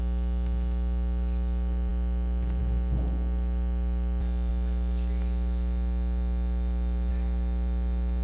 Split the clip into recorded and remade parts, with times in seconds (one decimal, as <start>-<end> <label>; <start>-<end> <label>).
0.0-8.2 recorded